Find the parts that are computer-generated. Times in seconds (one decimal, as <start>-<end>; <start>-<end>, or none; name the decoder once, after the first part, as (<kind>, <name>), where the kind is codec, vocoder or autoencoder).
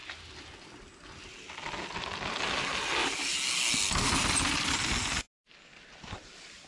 none